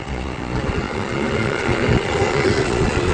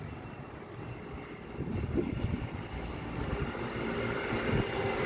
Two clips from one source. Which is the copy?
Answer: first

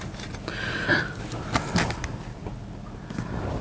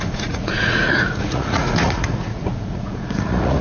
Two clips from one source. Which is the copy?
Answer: second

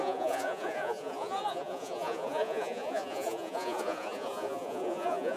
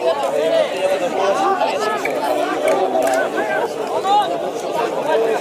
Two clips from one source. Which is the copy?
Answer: first